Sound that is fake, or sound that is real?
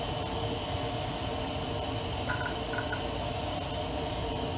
real